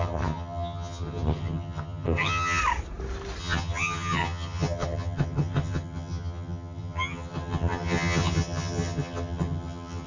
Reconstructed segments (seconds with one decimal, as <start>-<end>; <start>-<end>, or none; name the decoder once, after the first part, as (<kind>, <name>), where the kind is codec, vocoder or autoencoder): 0.0-2.6 (vocoder, HiFi-GAN); 3.4-10.1